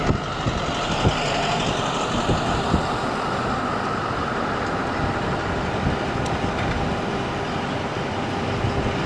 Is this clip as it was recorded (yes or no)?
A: yes